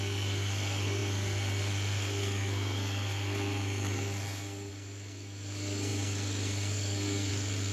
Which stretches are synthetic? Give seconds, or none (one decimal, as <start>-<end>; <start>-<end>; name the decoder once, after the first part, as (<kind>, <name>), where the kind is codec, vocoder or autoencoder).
0.0-7.7 (codec, SNAC)